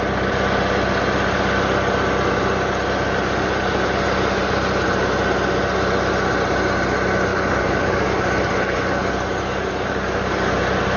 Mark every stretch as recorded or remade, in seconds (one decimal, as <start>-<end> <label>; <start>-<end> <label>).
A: 0.0-7.3 recorded; 7.3-10.6 remade; 10.6-11.0 recorded